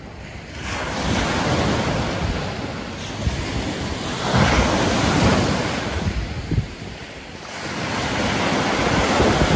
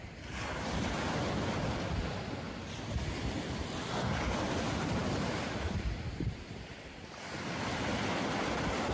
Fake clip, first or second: second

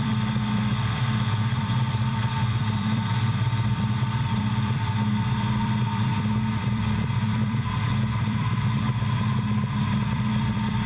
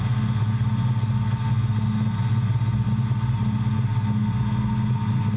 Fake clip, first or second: first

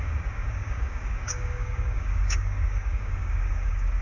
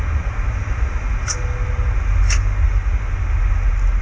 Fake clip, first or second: first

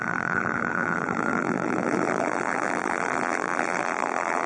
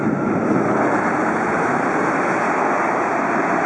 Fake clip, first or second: first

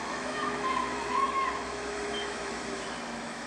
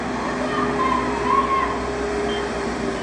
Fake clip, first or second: first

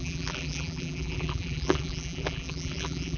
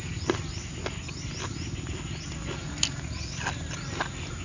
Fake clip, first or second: first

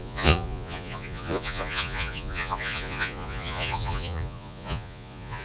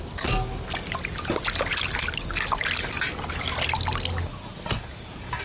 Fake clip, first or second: first